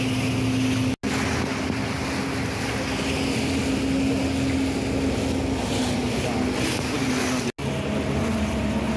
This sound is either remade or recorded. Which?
recorded